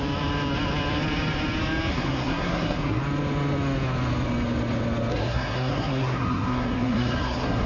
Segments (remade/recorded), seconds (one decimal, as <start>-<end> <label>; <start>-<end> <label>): 0.0-1.9 recorded; 1.9-3.0 remade; 3.0-5.1 recorded; 5.1-7.7 remade